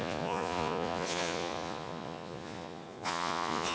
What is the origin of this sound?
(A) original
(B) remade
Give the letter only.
B